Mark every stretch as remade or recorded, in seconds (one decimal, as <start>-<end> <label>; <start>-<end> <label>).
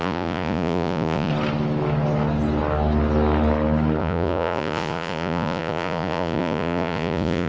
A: 0.0-1.3 remade; 1.3-4.0 recorded; 4.0-7.5 remade